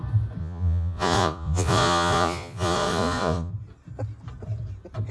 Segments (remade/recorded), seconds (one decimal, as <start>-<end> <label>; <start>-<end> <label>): 0.0-0.4 recorded; 0.4-3.5 remade; 3.5-5.1 recorded